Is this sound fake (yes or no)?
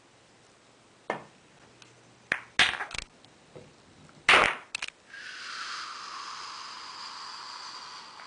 no